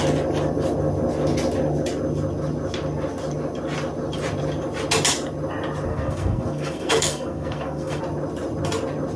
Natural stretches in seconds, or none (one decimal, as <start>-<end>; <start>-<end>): 0.0-5.9; 8.0-9.2

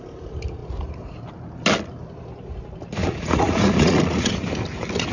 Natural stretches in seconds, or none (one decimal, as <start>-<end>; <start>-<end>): 0.0-3.0; 4.3-5.1

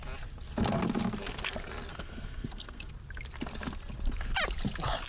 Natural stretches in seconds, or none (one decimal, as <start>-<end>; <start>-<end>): 0.0-1.9; 2.9-5.1

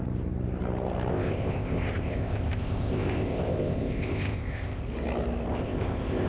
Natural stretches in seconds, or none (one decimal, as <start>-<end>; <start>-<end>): 0.0-1.1; 4.8-5.5